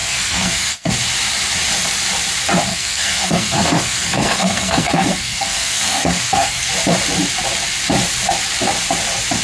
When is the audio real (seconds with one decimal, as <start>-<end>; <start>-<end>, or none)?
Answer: 0.9-2.7; 6.7-9.4